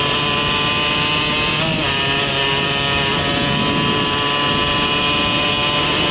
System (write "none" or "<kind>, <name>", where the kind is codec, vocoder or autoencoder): none